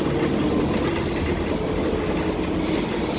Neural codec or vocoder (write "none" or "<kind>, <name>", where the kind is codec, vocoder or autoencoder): none